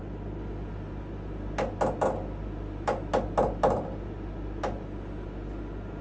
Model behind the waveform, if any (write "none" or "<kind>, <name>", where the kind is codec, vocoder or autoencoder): none